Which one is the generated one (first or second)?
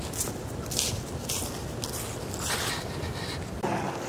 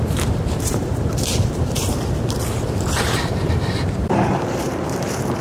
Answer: second